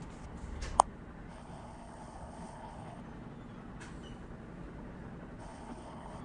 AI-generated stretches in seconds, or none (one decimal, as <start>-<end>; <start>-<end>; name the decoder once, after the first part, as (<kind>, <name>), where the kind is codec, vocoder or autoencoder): 1.3-3.0 (codec, HILCodec); 5.4-6.2